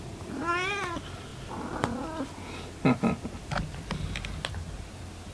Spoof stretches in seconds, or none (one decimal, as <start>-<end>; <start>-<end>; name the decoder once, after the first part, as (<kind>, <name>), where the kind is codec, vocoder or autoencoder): 1.3-4.5 (vocoder, BigVGAN v2)